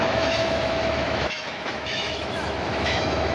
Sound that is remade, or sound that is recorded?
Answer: remade